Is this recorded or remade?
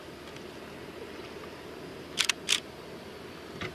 recorded